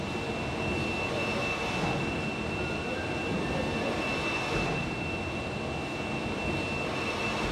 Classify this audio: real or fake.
real